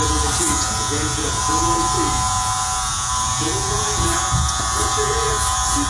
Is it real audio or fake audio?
fake